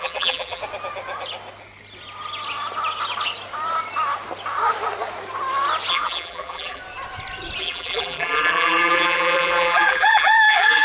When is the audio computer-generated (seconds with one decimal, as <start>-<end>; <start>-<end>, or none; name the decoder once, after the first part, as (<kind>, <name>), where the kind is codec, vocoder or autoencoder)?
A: 0.0-0.6 (vocoder, BigVGAN v2); 5.9-6.8; 7.6-10.8